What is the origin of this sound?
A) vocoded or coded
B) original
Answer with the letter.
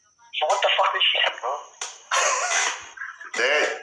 B